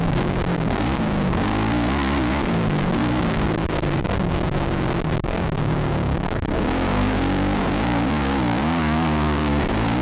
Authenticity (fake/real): fake